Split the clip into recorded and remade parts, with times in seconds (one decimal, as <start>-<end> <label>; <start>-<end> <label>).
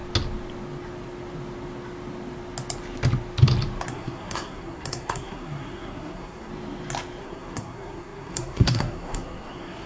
0.0-3.9 recorded; 3.9-6.5 remade; 6.5-7.2 recorded; 7.2-9.9 remade